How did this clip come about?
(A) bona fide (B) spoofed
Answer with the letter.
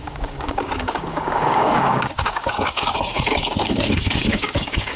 B